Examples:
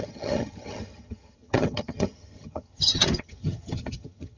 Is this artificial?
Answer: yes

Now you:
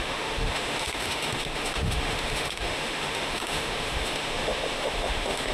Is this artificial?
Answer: yes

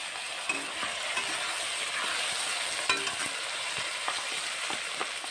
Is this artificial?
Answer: no